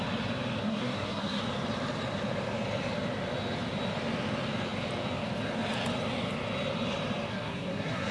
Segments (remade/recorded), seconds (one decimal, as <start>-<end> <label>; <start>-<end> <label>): 0.0-0.6 recorded; 0.6-1.4 remade; 1.4-7.3 recorded; 7.3-8.1 remade